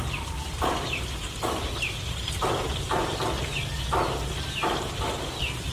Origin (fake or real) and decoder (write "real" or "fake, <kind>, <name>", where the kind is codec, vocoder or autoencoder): real